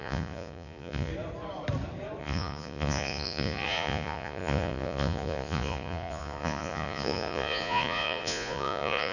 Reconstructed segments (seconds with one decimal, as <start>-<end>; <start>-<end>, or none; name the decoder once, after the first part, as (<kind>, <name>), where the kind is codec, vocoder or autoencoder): 0.0-1.1 (vocoder, Vocos); 2.2-9.1